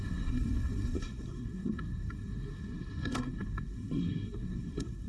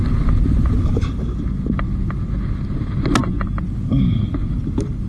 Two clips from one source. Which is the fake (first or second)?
first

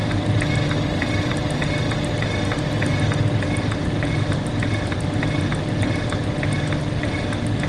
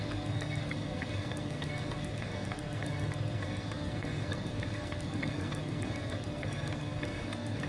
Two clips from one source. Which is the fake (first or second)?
second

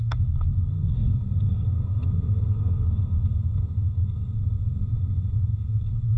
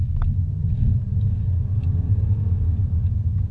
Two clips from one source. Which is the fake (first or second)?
first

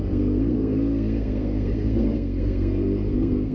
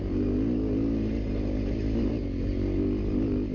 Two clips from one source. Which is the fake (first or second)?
first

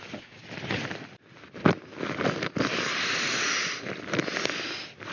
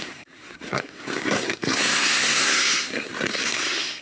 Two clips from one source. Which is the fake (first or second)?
second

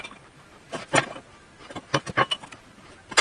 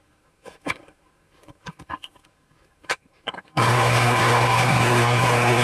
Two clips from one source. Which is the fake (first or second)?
second